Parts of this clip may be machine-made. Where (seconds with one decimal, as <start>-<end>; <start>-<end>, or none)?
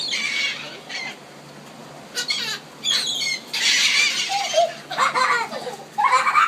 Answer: none